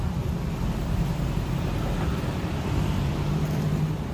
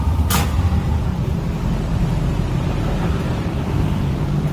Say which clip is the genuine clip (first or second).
second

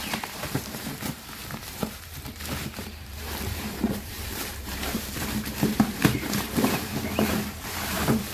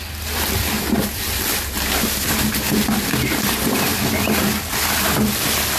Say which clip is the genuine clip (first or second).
second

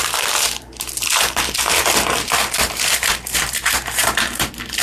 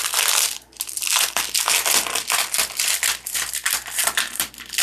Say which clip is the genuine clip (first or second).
second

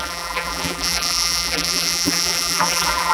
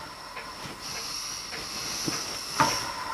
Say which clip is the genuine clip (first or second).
second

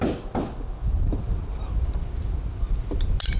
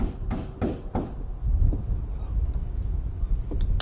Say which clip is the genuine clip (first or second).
second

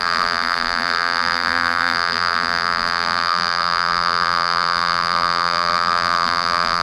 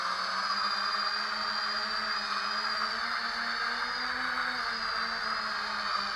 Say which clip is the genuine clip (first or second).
second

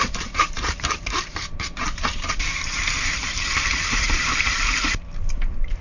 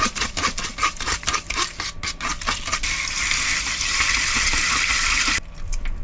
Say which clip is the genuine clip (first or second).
second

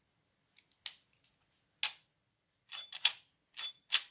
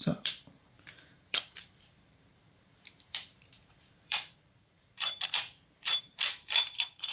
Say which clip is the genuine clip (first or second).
first